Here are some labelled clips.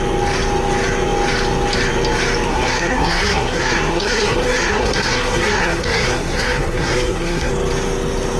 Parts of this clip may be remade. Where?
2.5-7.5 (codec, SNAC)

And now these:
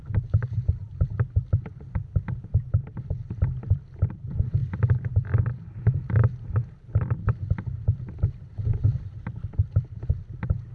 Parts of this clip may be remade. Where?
0.0-4.6 (vocoder, BigVGAN v2); 6.9-10.7

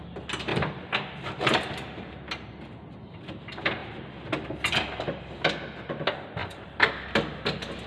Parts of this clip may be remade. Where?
0.5-2.1 (vocoder, BigVGAN v2); 6.4-6.9

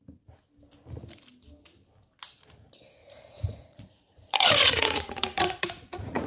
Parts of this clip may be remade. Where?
3.0-6.3 (vocoder, Vocos)

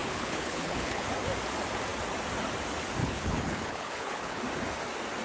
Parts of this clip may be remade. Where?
0.0-1.1 (codec, HILCodec); 3.0-4.4

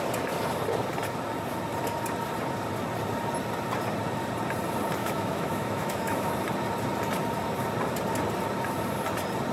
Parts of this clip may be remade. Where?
5.0-6.3 (autoencoder, DAC-VAE)

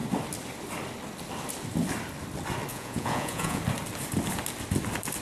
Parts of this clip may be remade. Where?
2.7-3.6 (vocoder, Vocos)

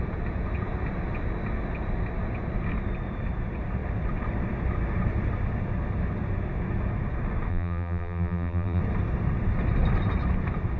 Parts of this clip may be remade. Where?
7.5-8.8 (vocoder, BigVGAN v2)